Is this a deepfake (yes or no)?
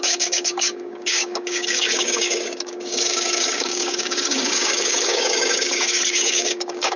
yes